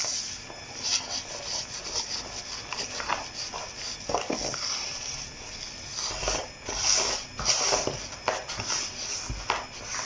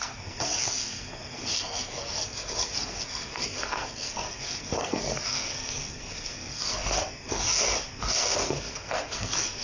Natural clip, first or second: first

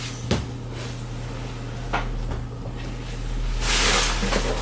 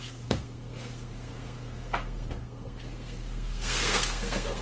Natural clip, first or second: first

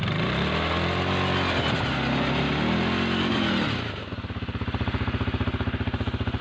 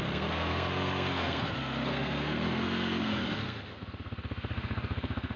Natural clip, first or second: first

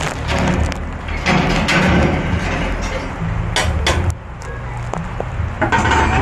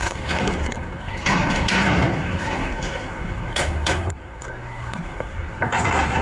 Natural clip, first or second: first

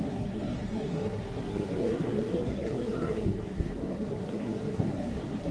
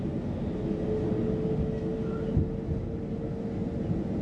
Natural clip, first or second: second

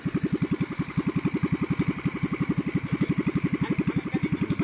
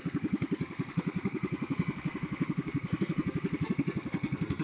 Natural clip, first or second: first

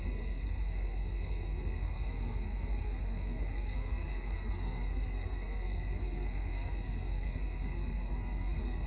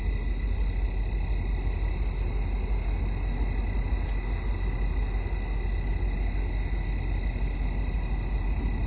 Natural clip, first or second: second